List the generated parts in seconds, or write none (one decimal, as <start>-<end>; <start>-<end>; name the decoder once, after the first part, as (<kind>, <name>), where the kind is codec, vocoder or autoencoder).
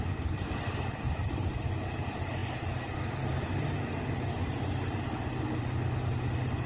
none